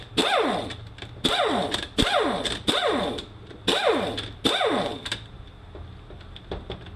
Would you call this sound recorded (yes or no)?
yes